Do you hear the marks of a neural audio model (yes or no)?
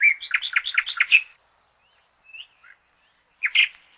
no